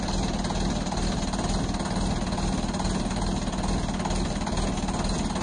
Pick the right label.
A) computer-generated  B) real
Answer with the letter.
B